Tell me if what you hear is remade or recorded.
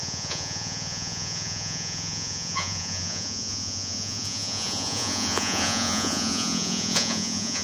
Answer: remade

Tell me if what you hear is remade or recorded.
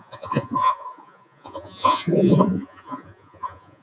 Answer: remade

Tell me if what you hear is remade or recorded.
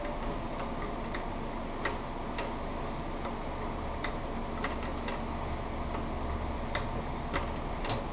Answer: recorded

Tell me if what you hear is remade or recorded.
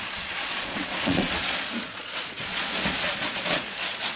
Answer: remade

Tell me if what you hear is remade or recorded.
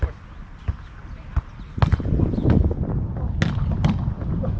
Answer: recorded